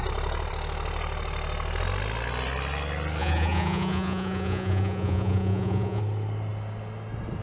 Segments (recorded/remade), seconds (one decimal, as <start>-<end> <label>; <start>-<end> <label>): 0.0-3.2 recorded; 3.2-6.0 remade; 6.0-7.4 recorded